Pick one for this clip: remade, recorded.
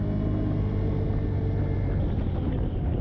recorded